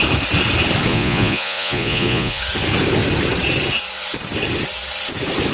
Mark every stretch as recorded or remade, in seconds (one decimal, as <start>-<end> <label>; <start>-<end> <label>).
0.0-0.9 recorded; 0.9-2.4 remade; 2.4-5.5 recorded

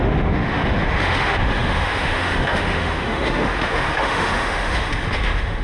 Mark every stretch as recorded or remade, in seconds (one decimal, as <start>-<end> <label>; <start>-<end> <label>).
0.0-5.6 remade

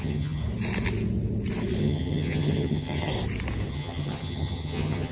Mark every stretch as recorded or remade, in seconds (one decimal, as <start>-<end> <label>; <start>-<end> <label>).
0.0-0.4 remade; 0.4-1.8 recorded; 1.8-3.1 remade; 3.1-3.7 recorded; 3.7-5.1 remade

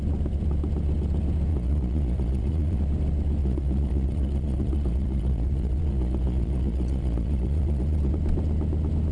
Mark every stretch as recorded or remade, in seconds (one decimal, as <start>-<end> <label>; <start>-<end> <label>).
0.0-1.5 recorded; 1.5-2.8 remade; 2.8-3.4 recorded; 3.4-8.1 remade; 8.1-9.1 recorded